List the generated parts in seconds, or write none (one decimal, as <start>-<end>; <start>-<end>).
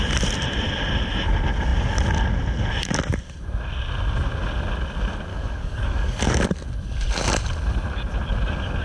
5.3-6.2